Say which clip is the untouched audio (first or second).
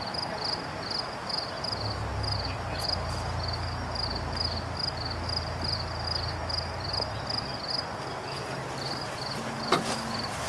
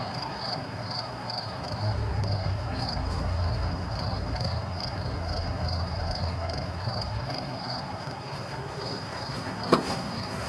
first